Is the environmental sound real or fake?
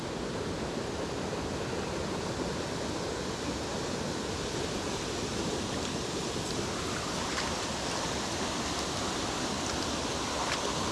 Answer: real